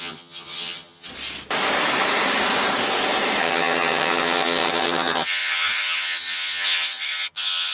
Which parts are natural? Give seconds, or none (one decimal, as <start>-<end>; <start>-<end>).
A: 1.1-3.4